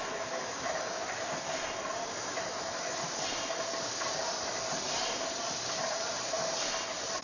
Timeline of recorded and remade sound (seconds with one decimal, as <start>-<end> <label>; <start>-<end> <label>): 0.0-1.0 remade; 1.0-2.2 recorded; 2.2-3.0 remade; 3.0-7.2 recorded